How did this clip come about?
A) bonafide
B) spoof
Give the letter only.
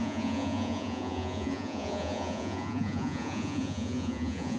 B